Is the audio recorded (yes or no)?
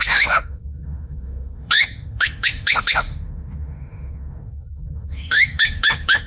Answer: no